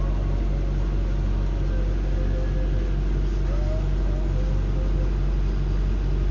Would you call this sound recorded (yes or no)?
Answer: yes